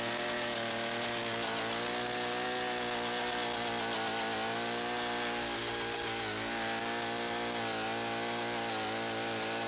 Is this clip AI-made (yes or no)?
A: no